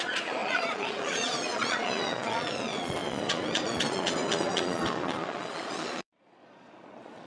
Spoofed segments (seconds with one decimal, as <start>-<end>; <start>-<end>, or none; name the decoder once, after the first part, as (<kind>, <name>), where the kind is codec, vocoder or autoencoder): 0.0-7.3 (vocoder, Vocos)